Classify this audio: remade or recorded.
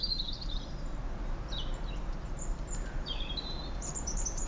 remade